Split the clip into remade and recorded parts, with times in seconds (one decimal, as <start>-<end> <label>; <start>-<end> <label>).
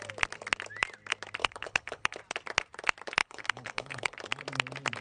0.0-1.4 recorded; 1.4-2.2 remade; 2.2-3.2 recorded; 3.2-4.2 remade; 4.2-5.0 recorded